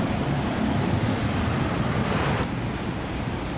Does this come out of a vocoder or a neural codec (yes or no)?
yes